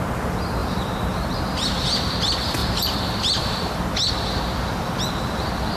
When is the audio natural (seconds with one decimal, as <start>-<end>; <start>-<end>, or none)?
0.0-0.6; 1.4-2.6; 3.8-5.8